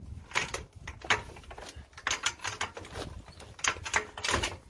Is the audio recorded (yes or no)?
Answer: yes